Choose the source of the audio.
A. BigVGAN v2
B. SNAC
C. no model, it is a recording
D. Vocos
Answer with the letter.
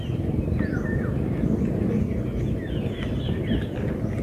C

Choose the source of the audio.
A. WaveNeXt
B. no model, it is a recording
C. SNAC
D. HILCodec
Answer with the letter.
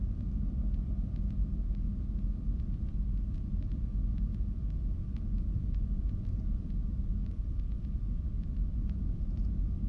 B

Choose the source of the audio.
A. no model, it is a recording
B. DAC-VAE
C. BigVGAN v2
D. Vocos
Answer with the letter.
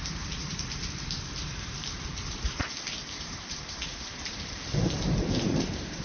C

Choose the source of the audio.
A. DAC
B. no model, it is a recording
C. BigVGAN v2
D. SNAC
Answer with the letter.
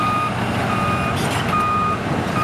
B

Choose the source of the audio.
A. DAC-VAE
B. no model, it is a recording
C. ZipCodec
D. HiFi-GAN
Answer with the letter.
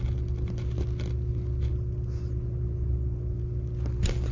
B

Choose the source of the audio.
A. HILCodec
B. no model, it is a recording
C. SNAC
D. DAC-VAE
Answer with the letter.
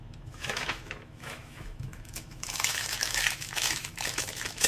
D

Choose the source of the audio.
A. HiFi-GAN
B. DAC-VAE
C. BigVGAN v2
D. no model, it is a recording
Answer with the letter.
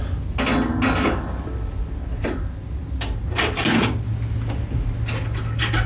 D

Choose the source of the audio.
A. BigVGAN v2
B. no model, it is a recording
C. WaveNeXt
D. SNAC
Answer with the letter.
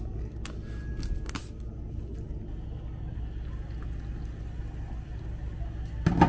B